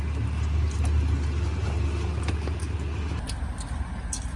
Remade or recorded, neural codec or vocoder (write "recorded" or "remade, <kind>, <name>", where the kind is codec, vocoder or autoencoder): recorded